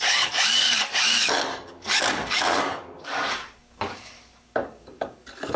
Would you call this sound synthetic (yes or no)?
yes